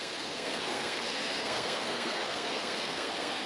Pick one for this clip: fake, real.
fake